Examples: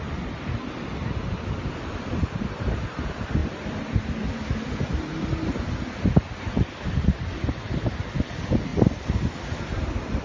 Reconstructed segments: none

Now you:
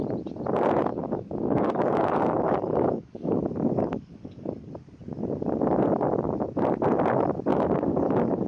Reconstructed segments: 0.9-3.4 (codec, DAC); 3.8-4.7; 7.5-8.5

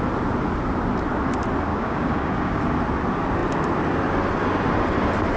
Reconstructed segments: 1.7-2.6 (codec, DAC)

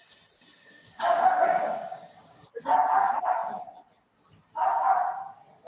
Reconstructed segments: 0.6-2.6 (codec, DAC)

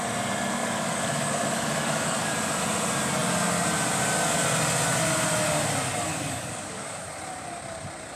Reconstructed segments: 0.6-2.3 (codec, DAC); 6.1-7.0